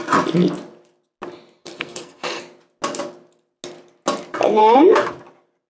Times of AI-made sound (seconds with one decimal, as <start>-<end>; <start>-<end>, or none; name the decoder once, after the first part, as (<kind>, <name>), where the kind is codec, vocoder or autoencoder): 1.6-2.4 (codec, SNAC); 4.6-5.1